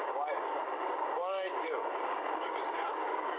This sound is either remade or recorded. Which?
remade